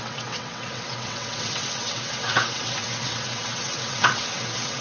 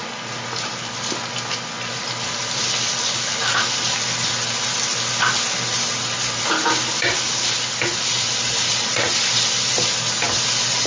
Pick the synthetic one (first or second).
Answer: first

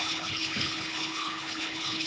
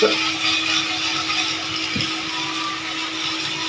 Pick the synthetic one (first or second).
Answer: first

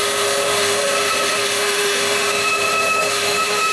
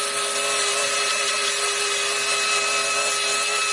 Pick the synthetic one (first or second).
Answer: first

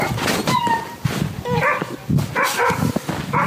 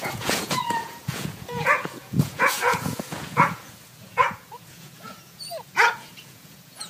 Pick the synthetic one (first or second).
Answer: second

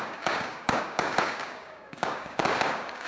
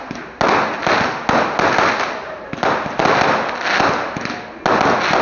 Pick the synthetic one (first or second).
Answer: first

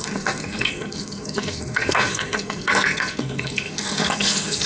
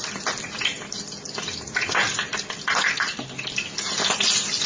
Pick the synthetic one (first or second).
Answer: first